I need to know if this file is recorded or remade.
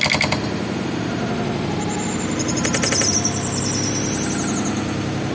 recorded